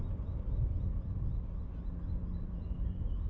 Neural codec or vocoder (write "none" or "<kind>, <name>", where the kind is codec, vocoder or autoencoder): none